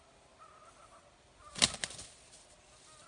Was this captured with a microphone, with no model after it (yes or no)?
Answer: yes